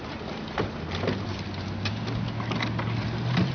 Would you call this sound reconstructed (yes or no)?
no